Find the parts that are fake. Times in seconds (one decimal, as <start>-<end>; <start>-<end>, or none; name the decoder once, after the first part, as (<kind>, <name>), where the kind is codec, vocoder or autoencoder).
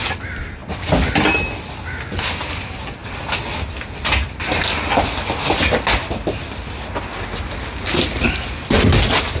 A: none